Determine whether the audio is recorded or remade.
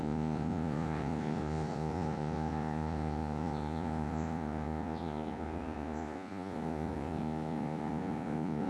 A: remade